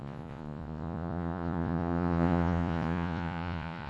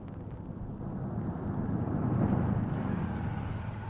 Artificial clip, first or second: first